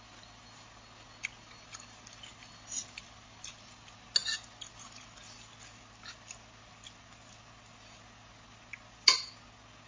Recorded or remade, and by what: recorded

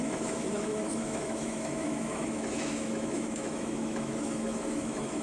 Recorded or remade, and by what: remade, autoencoder, DAC-VAE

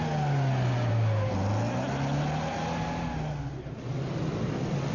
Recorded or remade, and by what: recorded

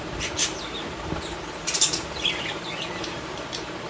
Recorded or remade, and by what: remade, vocoder, BigVGAN v2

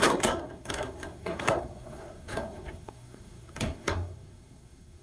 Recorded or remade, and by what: remade, codec, SNAC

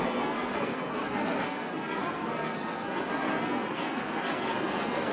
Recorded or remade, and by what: remade, codec, SNAC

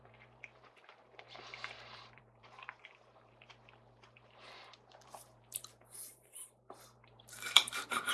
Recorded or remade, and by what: remade, vocoder, BigVGAN v2